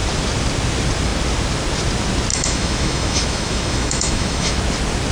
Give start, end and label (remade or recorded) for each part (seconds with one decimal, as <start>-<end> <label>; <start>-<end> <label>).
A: 0.0-2.3 recorded; 2.3-4.6 remade; 4.6-5.1 recorded